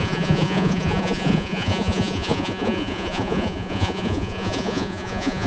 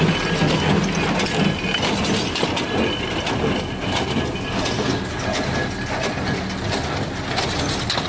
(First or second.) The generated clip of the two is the first